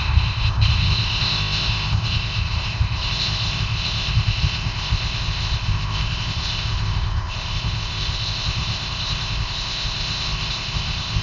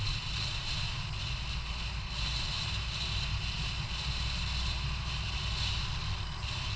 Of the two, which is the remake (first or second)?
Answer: first